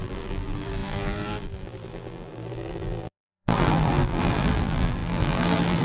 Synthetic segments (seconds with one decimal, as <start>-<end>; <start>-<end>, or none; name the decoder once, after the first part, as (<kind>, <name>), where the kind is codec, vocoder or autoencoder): 0.0-5.8 (vocoder, BigVGAN v2)